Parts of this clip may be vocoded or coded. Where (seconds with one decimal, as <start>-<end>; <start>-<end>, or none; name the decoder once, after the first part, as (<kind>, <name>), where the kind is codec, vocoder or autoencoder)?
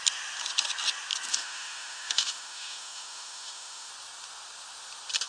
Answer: 1.3-3.9 (autoencoder, DAC-VAE)